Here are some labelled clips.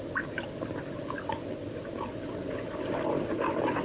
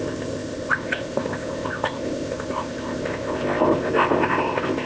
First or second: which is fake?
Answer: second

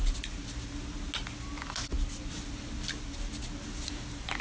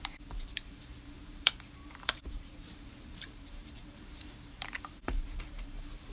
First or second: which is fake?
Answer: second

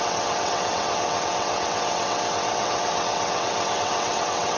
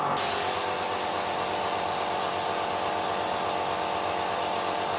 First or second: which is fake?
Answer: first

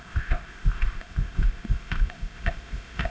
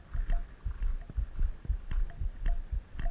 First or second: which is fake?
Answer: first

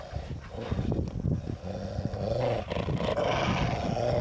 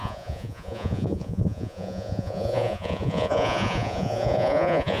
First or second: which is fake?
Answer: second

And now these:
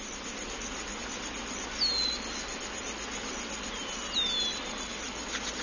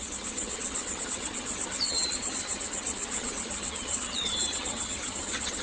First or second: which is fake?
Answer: second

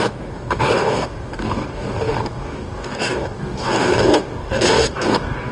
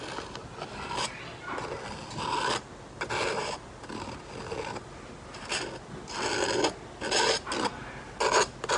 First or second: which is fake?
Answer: first